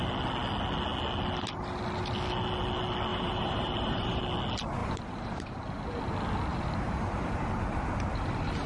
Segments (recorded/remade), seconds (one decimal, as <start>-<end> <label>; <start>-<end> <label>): 0.0-3.1 recorded; 3.1-4.2 remade; 4.2-4.8 recorded; 4.8-6.0 remade; 6.0-6.5 recorded; 6.5-8.7 remade